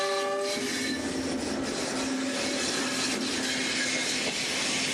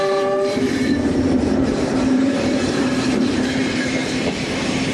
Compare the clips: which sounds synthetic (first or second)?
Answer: second